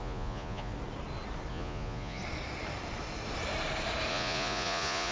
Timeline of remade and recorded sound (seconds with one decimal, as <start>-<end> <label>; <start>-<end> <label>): 0.0-0.7 remade; 0.7-1.5 recorded; 1.5-2.2 remade; 2.2-4.1 recorded; 4.1-5.1 remade